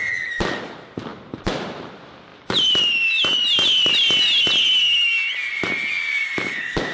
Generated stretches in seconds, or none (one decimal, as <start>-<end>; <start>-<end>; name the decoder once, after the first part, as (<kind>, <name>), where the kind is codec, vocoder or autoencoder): none